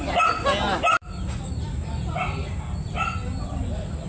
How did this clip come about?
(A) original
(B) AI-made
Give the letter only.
A